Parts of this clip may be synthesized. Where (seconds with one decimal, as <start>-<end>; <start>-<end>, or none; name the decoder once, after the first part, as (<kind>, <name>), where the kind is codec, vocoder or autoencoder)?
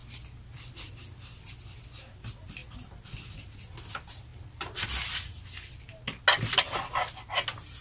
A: none